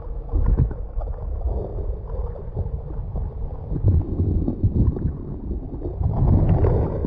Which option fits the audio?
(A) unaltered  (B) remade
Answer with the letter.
A